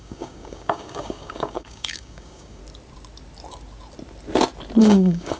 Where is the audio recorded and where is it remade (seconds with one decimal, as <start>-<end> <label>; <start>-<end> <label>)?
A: 0.0-2.6 remade; 2.6-4.8 recorded; 4.8-5.4 remade

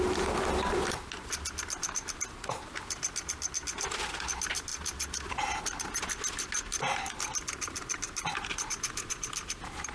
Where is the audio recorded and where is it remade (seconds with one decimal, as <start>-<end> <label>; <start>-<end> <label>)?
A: 0.0-9.9 recorded

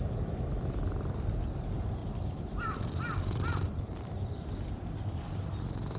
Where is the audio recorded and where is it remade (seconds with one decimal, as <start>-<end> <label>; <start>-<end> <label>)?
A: 0.0-2.0 recorded; 2.0-4.2 remade; 4.2-6.0 recorded